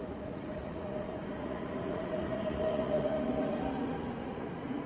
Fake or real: fake